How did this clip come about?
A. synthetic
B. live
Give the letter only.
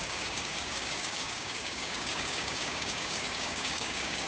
A